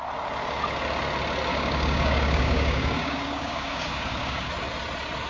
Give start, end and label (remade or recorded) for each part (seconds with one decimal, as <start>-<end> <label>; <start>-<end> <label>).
0.0-1.5 recorded; 1.5-4.5 remade; 4.5-5.3 recorded